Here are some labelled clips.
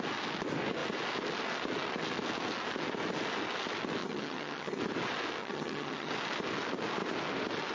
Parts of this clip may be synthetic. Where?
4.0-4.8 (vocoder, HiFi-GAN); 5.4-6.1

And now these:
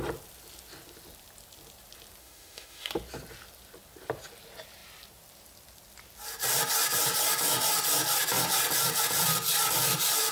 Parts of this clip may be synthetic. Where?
2.2-2.9 (autoencoder, DAC-VAE)